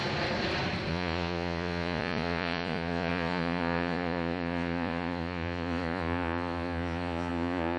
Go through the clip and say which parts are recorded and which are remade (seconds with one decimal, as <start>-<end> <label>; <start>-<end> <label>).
0.0-0.9 recorded; 0.9-7.8 remade

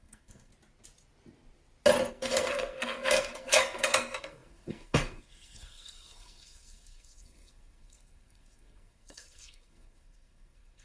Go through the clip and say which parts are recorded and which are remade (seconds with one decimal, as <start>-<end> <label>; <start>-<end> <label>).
0.0-0.5 remade; 0.5-2.1 recorded; 2.1-10.8 remade

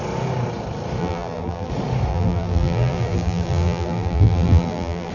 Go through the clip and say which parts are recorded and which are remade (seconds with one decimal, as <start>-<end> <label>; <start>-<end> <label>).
0.0-1.0 recorded; 1.0-1.7 remade; 1.7-2.1 recorded; 2.1-5.1 remade

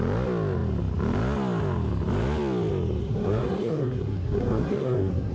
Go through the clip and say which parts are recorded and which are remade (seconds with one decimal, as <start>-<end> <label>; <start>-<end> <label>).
0.0-3.0 recorded; 3.0-5.3 remade